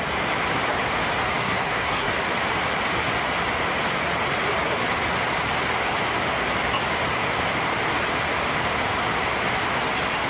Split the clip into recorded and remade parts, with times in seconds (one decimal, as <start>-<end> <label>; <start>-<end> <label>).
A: 0.0-1.4 recorded; 1.4-2.1 remade; 2.1-10.3 recorded